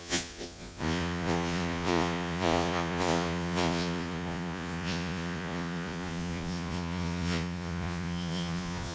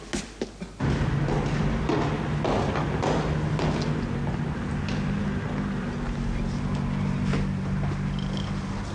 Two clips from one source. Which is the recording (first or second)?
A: second